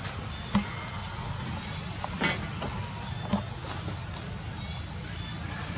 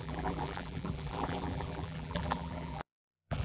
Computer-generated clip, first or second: second